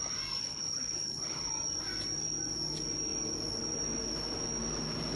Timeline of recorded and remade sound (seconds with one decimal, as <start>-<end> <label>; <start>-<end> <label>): 0.0-0.4 recorded; 0.4-1.5 remade; 1.5-5.2 recorded